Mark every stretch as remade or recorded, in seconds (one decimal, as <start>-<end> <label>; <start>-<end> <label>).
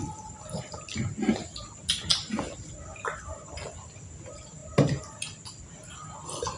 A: 0.0-6.6 recorded